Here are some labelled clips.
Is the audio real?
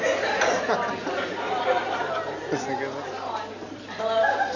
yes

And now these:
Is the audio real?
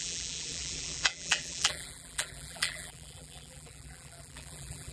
no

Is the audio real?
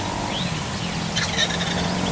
yes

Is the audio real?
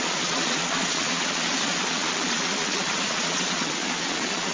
no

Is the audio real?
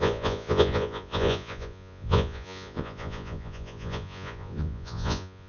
no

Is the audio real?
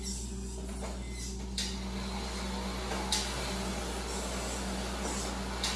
yes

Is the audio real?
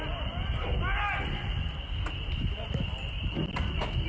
yes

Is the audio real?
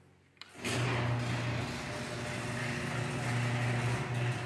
yes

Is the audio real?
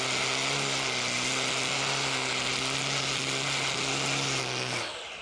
yes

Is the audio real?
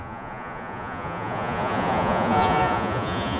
no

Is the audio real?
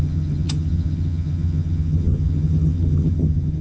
no